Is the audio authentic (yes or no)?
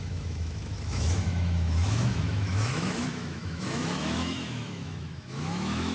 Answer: no